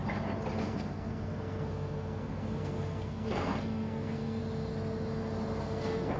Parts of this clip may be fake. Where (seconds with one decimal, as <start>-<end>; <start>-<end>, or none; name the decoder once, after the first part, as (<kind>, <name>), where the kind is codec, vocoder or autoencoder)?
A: 0.6-4.4 (codec, SNAC); 5.6-6.2